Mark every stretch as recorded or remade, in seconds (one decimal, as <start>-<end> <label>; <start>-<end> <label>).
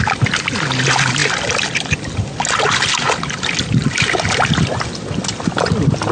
0.0-6.1 recorded